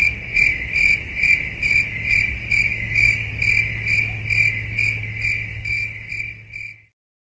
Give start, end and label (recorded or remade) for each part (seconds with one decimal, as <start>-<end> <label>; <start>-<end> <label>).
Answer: 0.0-2.7 recorded; 2.7-3.3 remade; 3.3-5.5 recorded; 5.5-6.1 remade; 6.1-7.3 recorded

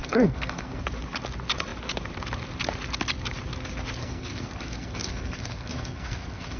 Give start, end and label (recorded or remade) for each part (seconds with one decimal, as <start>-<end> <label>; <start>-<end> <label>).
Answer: 0.0-0.8 remade; 0.8-4.0 recorded; 4.0-6.6 remade

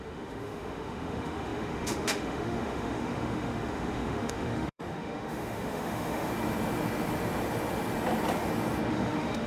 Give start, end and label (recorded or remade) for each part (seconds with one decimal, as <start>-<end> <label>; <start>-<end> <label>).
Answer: 0.0-6.3 remade; 6.3-8.9 recorded; 8.9-9.5 remade